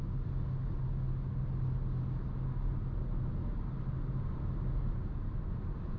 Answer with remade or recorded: recorded